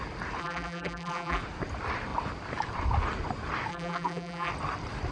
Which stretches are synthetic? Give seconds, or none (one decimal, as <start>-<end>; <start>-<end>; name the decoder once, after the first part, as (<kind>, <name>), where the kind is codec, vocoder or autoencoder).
0.4-1.4 (vocoder, BigVGAN v2); 3.7-4.5